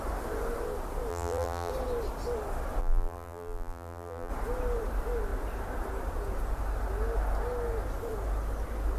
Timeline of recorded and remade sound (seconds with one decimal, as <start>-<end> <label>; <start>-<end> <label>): 0.0-1.1 recorded; 1.1-1.7 remade; 1.7-2.8 recorded; 2.8-4.3 remade; 4.3-9.0 recorded